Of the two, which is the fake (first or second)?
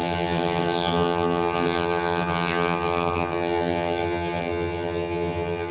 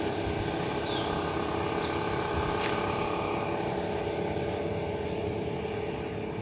first